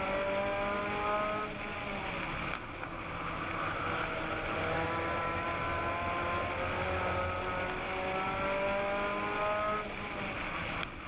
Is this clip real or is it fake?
real